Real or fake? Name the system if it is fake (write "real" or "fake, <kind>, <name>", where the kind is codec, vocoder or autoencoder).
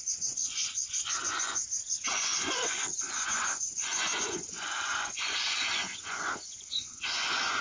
fake, vocoder, Vocos